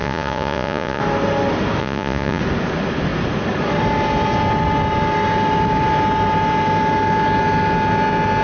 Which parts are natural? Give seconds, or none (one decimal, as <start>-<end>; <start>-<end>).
1.0-1.8; 2.4-8.4